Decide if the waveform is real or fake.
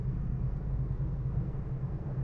fake